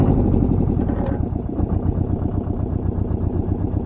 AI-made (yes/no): yes